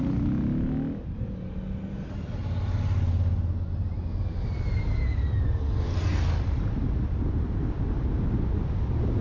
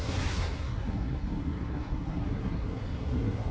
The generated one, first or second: second